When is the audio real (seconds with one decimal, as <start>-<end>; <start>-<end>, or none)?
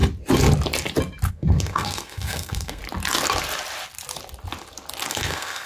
0.0-1.3; 2.8-5.1